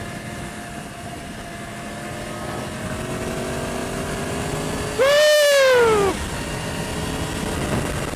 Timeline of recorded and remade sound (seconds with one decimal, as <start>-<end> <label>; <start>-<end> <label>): 0.0-8.2 recorded